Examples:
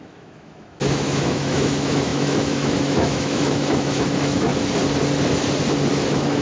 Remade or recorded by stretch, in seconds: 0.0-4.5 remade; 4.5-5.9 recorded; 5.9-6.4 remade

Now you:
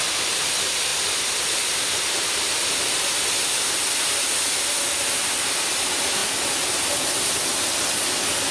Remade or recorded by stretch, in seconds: 0.0-8.5 recorded

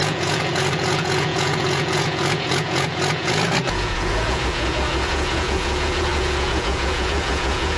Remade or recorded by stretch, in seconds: 0.0-7.8 remade